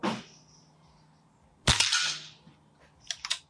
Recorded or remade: recorded